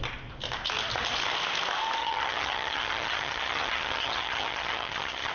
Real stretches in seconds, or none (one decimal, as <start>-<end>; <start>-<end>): 0.0-2.0